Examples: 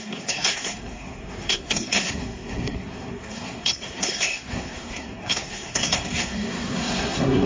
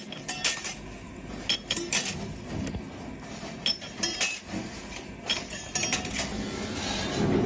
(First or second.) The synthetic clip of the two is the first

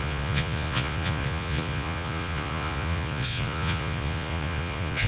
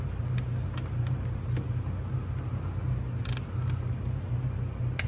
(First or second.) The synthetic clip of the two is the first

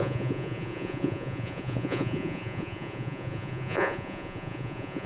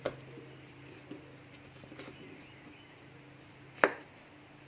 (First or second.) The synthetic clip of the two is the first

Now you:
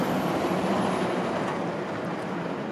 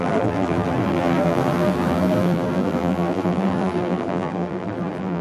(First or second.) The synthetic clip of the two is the second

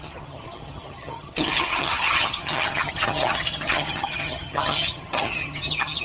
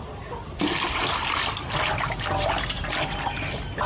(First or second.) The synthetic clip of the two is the first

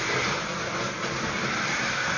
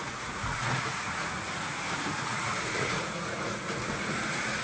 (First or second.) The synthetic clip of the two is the second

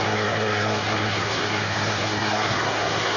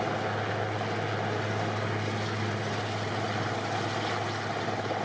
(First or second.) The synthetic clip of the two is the first